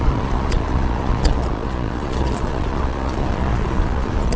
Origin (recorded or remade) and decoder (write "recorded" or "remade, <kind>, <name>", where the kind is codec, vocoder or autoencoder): remade, vocoder, Vocos